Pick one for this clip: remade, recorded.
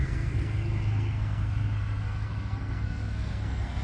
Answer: remade